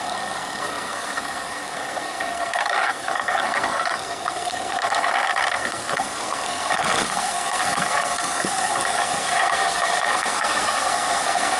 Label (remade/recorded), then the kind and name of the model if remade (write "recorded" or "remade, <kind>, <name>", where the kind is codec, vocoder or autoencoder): remade, codec, SNAC